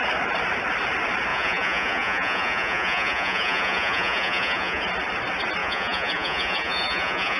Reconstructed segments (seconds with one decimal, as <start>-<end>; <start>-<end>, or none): 1.3-4.8; 5.6-7.4